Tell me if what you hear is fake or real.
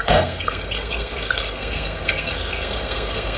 fake